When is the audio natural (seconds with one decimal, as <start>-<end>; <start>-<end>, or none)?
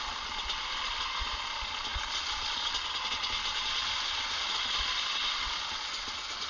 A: 0.0-6.5